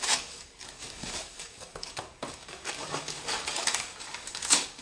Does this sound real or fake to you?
fake